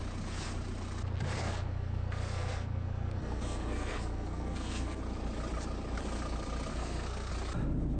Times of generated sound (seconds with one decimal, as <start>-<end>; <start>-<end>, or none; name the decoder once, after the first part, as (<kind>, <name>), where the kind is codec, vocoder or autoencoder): 1.4-5.0 (codec, SNAC); 6.7-7.3